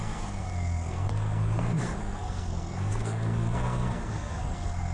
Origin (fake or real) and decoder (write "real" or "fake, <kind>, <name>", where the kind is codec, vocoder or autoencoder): fake, codec, SNAC